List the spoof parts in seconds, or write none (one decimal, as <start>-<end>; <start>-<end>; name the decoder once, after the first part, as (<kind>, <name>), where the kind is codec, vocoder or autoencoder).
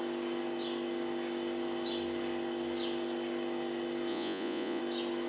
4.1-4.8 (vocoder, Vocos)